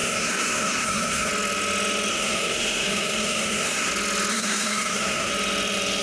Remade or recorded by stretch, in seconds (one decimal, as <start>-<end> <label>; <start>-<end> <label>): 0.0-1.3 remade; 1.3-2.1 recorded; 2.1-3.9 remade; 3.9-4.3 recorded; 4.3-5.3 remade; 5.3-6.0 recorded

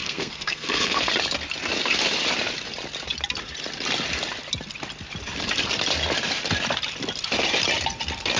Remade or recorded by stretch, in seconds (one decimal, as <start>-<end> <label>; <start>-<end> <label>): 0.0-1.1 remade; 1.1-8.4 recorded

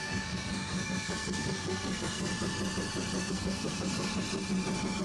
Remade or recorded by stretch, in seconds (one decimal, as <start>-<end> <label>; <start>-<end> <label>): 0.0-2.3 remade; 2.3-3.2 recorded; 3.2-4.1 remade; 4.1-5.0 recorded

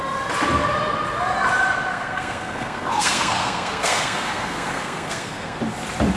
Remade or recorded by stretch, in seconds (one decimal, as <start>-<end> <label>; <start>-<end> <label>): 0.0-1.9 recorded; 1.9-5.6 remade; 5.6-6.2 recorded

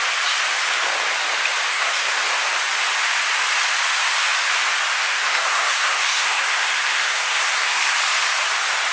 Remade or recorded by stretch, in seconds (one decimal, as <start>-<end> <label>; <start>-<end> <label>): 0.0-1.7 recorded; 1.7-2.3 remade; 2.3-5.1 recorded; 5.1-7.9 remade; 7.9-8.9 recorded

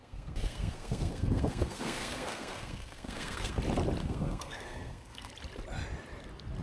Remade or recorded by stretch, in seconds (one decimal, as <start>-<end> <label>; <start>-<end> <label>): 0.0-3.6 remade; 3.6-4.0 recorded; 4.0-5.3 remade; 5.3-6.6 recorded